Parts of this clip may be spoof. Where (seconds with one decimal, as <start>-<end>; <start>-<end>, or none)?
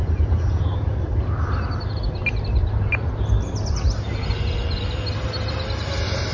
none